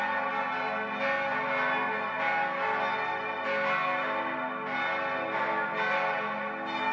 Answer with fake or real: real